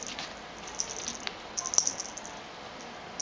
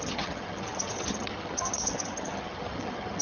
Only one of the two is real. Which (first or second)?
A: first